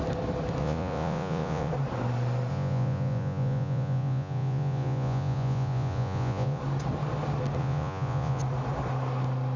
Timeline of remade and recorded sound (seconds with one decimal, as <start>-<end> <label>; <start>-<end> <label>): 0.0-0.6 recorded; 0.6-1.7 remade; 1.7-2.5 recorded; 2.5-6.6 remade; 6.6-7.6 recorded; 7.6-8.4 remade; 8.4-9.6 recorded